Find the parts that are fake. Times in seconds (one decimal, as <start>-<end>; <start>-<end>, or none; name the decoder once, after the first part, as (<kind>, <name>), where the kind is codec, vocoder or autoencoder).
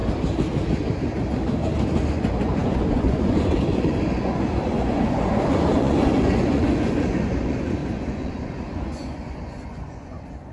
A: 2.1-10.5 (vocoder, Vocos)